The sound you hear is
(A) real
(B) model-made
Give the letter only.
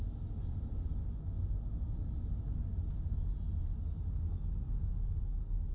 A